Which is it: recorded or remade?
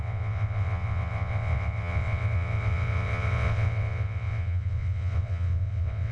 remade